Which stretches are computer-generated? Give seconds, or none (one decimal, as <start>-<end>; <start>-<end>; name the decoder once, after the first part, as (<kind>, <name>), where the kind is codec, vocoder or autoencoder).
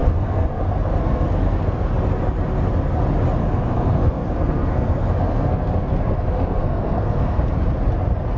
0.0-0.6 (codec, SNAC); 1.0-1.9; 3.4-7.4